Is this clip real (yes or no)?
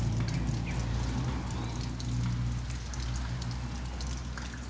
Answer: yes